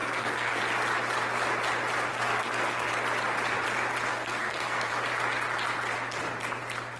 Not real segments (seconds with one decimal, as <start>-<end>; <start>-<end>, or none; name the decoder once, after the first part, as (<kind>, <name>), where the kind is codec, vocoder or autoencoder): 0.0-0.6 (codec, SNAC); 2.1-2.9; 4.1-4.9